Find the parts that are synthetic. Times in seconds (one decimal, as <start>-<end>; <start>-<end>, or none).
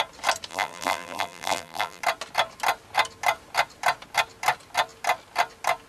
0.5-2.0